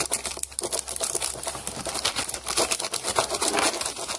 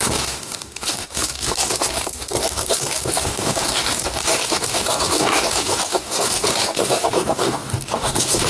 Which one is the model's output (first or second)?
second